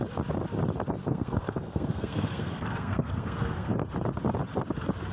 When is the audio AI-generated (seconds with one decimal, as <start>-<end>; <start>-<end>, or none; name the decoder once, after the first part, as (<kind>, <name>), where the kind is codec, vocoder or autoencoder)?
1.0-3.7 (codec, SNAC)

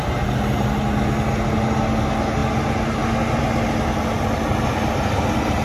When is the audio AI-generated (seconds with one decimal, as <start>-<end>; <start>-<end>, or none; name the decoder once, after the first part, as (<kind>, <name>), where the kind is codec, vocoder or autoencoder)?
none

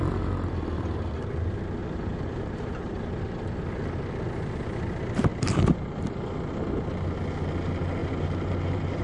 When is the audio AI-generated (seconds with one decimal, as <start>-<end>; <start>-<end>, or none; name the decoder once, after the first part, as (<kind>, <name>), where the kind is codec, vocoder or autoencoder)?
1.8-3.2 (vocoder, BigVGAN v2); 5.3-6.0; 8.0-9.0

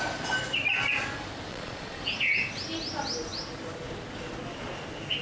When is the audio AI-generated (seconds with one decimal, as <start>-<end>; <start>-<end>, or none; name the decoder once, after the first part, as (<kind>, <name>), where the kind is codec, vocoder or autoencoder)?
1.5-2.0 (vocoder, Vocos)